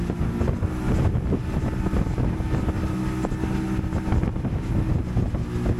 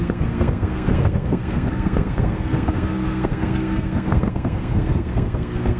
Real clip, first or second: first